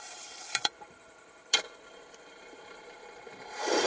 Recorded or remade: remade